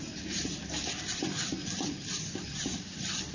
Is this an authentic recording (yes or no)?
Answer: yes